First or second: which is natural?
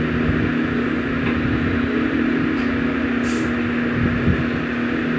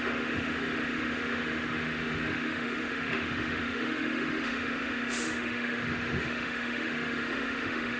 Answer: first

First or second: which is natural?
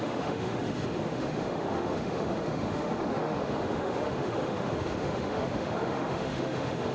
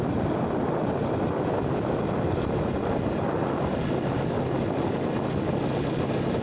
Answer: second